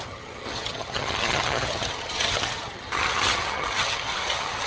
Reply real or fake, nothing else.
fake